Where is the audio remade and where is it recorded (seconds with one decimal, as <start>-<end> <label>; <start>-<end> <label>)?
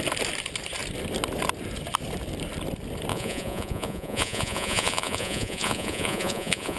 0.0-3.1 recorded; 3.1-6.8 remade